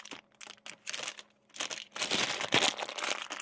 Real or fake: real